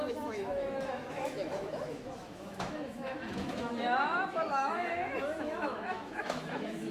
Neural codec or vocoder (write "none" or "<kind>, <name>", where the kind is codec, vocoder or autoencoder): autoencoder, DAC-VAE